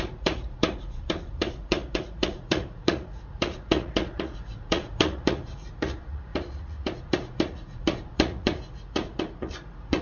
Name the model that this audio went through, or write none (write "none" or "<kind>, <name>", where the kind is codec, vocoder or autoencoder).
vocoder, Vocos